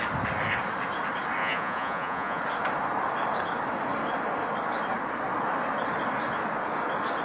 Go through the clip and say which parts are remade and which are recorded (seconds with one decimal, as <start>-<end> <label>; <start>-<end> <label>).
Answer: 0.0-1.4 recorded; 1.4-2.4 remade; 2.4-7.2 recorded